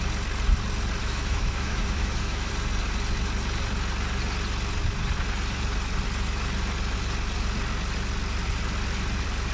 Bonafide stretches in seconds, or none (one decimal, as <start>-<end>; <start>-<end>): 0.0-1.0; 2.5-9.5